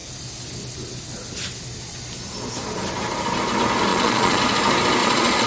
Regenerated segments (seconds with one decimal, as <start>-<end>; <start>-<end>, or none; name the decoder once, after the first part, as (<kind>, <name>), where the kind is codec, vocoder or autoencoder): 3.9-4.4 (vocoder, Vocos); 5.0-5.5